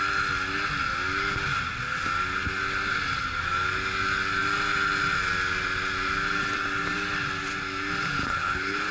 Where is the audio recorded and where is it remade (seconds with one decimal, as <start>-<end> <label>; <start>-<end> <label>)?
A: 0.0-8.2 recorded; 8.2-8.9 remade